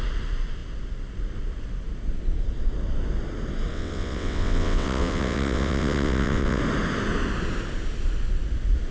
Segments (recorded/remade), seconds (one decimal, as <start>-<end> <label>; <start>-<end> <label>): 0.0-3.7 recorded; 3.7-6.6 remade; 6.6-8.9 recorded